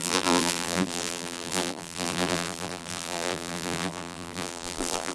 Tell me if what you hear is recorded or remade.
remade